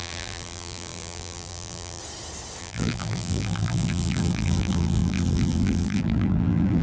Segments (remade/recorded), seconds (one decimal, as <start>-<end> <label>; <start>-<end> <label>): 0.0-2.0 remade; 2.0-2.6 recorded; 2.6-6.8 remade